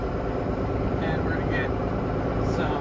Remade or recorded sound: remade